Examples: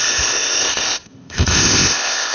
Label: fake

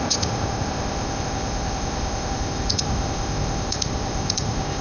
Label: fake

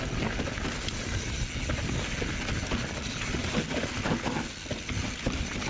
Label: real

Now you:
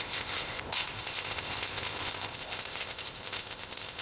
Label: fake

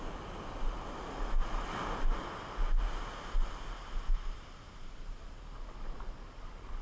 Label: real